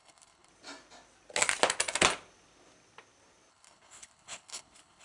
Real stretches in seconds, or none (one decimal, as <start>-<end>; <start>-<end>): 0.5-3.5